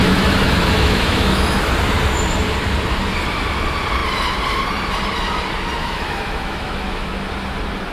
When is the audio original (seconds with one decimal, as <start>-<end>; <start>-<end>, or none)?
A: 1.7-5.8; 7.1-7.9